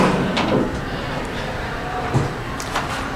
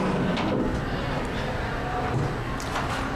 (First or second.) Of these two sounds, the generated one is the first